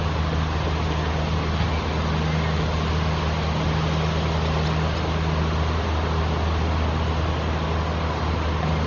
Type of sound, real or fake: real